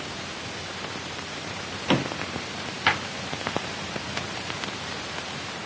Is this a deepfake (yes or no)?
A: yes